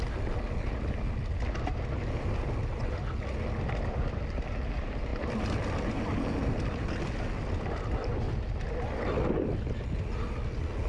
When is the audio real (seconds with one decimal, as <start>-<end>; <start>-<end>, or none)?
0.0-10.9